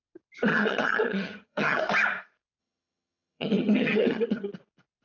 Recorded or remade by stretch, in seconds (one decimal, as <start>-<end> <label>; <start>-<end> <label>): 0.0-0.5 recorded; 0.5-1.8 remade; 1.8-2.6 recorded; 2.6-4.5 remade; 4.5-5.0 recorded

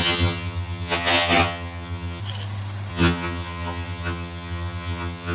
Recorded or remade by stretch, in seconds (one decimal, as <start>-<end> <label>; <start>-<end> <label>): 0.0-2.2 remade; 2.2-2.9 recorded; 2.9-5.3 remade

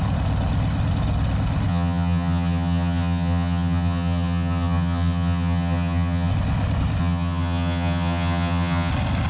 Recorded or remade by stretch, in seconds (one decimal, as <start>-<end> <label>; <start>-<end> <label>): 0.0-1.7 recorded; 1.7-6.3 remade; 6.3-7.0 recorded; 7.0-8.9 remade; 8.9-9.3 recorded

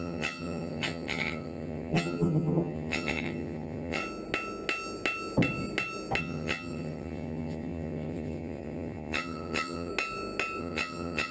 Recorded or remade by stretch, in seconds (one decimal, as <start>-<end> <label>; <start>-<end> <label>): 0.0-4.0 remade; 4.0-6.2 recorded; 6.2-9.9 remade; 9.9-10.6 recorded; 10.6-11.3 remade

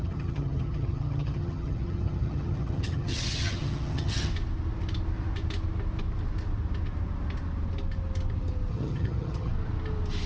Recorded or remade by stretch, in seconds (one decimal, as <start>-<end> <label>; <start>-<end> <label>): 0.0-4.3 remade; 4.3-8.7 recorded; 8.7-9.5 remade; 9.5-10.3 recorded

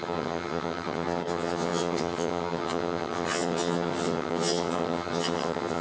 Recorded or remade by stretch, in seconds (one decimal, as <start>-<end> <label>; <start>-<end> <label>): 0.0-5.8 remade